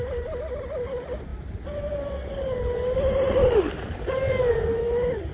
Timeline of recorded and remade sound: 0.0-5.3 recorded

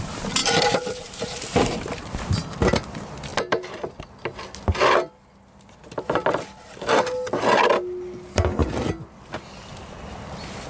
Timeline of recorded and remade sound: 0.0-0.4 recorded; 0.4-1.0 remade; 1.0-3.3 recorded; 3.3-4.0 remade; 4.0-8.6 recorded; 8.6-9.3 remade; 9.3-10.7 recorded

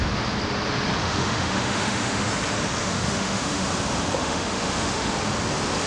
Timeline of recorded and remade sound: 0.0-1.0 recorded; 1.0-2.3 remade; 2.3-2.8 recorded; 2.8-3.7 remade; 3.7-4.2 recorded; 4.2-5.1 remade; 5.1-5.9 recorded

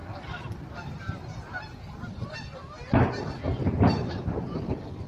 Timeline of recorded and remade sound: 0.0-0.7 recorded; 0.7-2.2 remade; 2.2-4.4 recorded; 4.4-5.1 remade